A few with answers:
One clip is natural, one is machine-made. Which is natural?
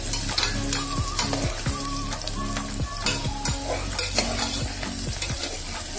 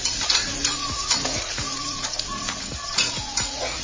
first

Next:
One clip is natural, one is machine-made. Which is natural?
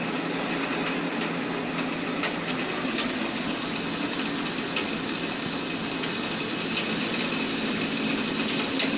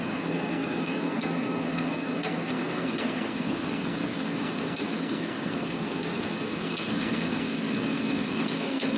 first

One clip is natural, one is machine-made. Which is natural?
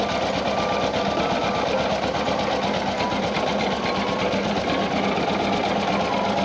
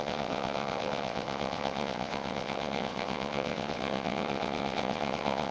first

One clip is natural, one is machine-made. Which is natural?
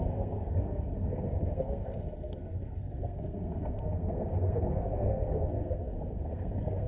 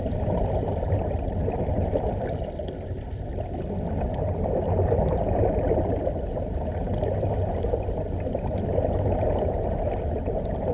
second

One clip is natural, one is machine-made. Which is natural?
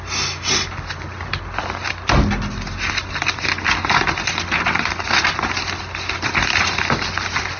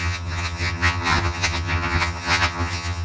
first